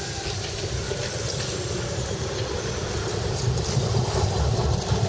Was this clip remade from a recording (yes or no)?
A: no